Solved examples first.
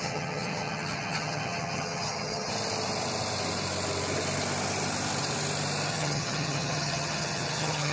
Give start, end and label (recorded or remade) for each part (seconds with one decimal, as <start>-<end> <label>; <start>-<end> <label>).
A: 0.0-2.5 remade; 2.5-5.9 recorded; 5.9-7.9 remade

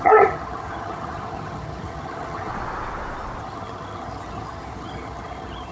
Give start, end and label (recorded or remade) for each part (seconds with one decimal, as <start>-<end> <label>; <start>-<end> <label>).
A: 0.0-2.5 remade; 2.5-3.4 recorded; 3.4-5.7 remade

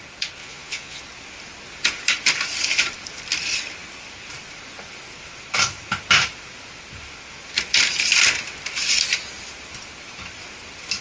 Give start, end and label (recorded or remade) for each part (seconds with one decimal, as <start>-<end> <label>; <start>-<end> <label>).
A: 0.0-0.4 recorded; 0.4-1.0 remade; 1.0-11.0 recorded